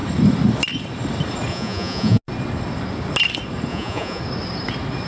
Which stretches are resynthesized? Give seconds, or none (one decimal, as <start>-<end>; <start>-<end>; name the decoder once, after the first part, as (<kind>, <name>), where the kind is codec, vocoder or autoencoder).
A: 1.5-2.2 (vocoder, Vocos); 3.7-4.2